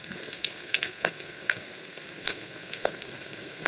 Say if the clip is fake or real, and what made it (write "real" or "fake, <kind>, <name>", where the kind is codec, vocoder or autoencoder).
fake, codec, SNAC